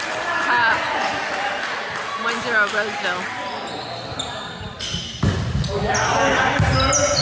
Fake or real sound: real